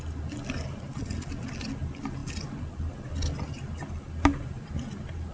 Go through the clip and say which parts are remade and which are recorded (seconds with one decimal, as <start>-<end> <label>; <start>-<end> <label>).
0.0-5.3 recorded